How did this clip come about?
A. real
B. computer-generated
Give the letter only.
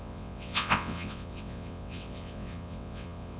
B